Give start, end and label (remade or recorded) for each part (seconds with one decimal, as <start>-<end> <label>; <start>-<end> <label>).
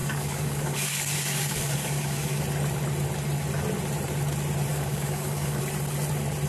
0.0-2.4 remade; 2.4-4.7 recorded; 4.7-5.6 remade; 5.6-6.5 recorded